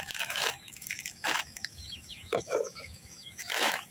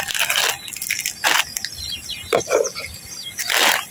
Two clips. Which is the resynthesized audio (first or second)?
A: first